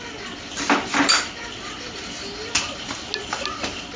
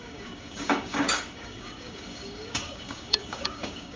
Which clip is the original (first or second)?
first